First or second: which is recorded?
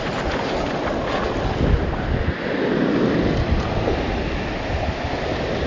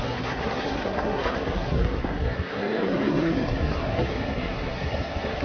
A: first